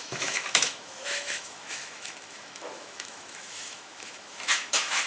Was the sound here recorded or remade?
remade